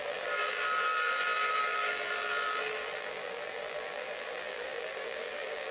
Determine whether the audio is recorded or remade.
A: remade